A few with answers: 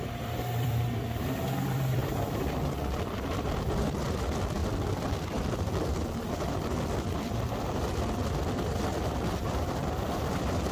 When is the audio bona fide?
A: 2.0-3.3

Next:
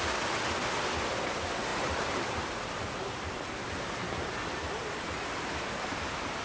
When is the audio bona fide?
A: 0.0-1.7; 3.2-6.4

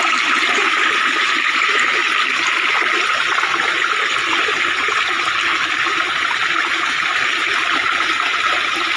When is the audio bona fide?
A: 2.0-4.3; 5.5-6.7

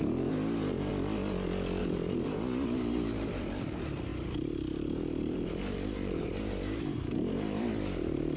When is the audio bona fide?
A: 0.9-1.8

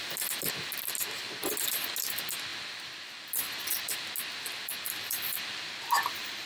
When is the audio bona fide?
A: 0.0-6.5

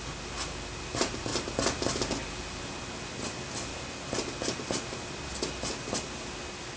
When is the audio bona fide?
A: 0.0-6.8